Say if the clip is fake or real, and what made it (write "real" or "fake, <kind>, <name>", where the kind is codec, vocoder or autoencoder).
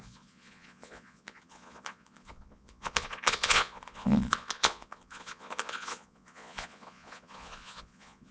fake, vocoder, Vocos